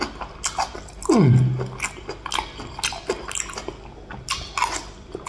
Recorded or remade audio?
recorded